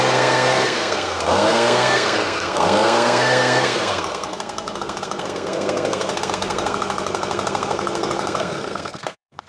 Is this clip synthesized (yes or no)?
yes